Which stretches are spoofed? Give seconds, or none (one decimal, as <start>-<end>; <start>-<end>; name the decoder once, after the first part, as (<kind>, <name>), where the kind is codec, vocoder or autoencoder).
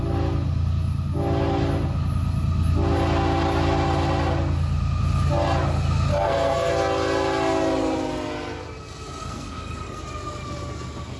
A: 6.1-6.7 (codec, SNAC); 9.2-10.0